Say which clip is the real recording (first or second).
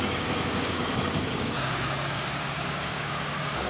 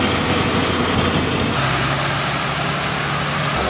second